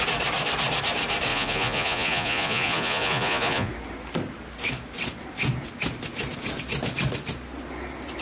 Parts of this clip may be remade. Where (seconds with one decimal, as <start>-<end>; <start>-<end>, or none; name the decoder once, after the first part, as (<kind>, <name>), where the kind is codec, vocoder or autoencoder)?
1.3-3.7 (vocoder, Vocos)